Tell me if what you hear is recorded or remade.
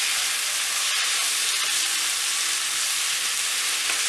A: recorded